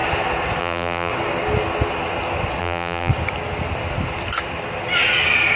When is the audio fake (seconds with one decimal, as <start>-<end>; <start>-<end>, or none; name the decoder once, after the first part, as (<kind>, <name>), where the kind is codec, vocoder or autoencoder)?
0.6-1.1 (vocoder, BigVGAN v2); 2.6-3.1